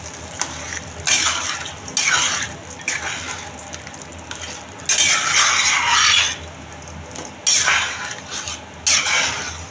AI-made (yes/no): no